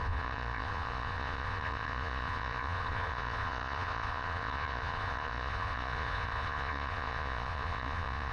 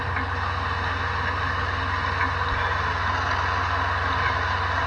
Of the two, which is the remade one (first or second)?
first